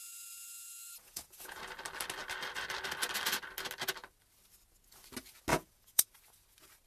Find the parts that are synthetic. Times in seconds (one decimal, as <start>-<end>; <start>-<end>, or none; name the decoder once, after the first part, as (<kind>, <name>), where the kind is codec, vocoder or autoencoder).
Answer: 0.0-1.6 (vocoder, Vocos); 5.5-6.1